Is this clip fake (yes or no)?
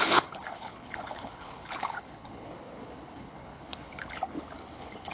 yes